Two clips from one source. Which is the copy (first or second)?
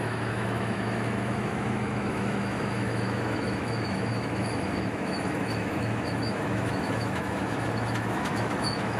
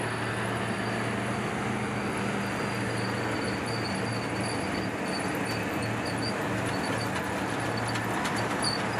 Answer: first